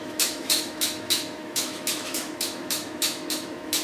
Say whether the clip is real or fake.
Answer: fake